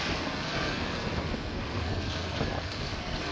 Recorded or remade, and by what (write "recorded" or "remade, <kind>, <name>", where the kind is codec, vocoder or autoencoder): remade, codec, SNAC